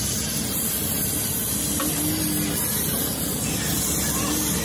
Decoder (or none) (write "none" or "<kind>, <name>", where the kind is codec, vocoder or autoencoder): none